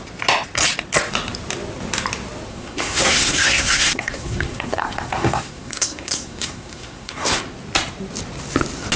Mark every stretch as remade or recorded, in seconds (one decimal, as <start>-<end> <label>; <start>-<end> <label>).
0.0-2.5 recorded; 2.5-7.4 remade; 7.4-9.0 recorded